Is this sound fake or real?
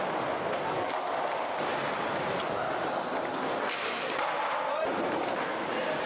real